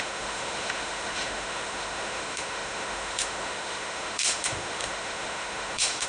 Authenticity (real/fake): fake